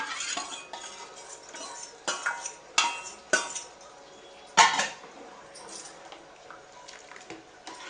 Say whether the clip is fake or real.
real